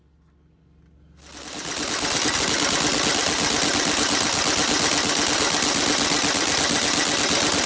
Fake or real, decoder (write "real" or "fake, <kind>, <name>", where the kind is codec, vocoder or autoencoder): real